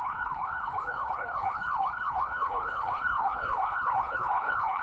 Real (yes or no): no